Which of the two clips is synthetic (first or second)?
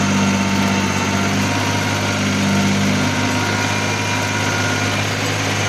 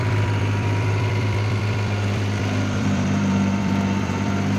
second